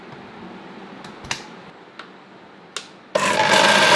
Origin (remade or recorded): recorded